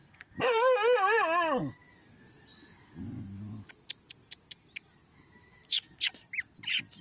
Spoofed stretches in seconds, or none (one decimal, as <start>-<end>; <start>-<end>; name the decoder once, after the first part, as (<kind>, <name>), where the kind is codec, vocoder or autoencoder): 5.0-5.9 (autoencoder, DAC-VAE)